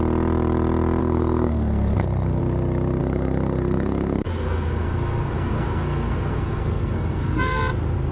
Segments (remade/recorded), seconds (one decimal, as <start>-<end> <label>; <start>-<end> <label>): 0.0-1.0 recorded; 1.0-2.4 remade; 2.4-3.0 recorded; 3.0-7.6 remade; 7.6-8.1 recorded